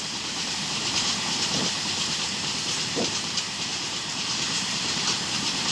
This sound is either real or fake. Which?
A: fake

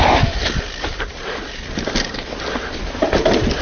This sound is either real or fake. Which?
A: fake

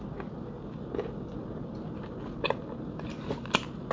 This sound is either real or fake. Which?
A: real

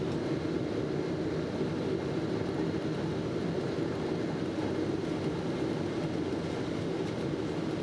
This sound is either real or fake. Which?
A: real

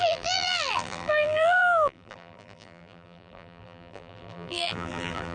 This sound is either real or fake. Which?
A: fake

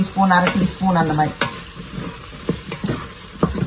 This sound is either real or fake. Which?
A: real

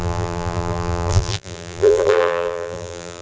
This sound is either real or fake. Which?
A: fake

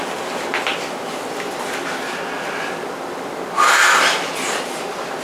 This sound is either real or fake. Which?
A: real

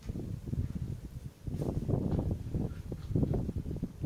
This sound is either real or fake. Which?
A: real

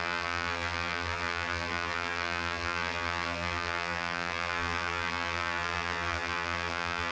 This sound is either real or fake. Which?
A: fake